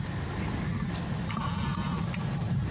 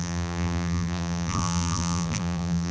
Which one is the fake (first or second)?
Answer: second